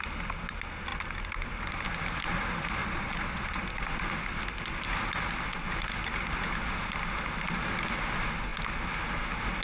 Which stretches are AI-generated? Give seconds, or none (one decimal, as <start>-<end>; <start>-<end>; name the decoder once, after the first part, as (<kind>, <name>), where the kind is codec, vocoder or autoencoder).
2.8-3.6 (vocoder, Vocos)